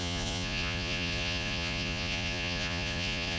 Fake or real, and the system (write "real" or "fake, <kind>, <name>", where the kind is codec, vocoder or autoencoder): fake, vocoder, Vocos